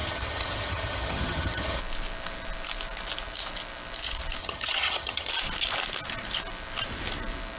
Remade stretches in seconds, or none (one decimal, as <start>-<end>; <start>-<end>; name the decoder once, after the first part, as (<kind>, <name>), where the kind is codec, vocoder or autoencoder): 0.0-1.8 (vocoder, HiFi-GAN); 4.4-5.3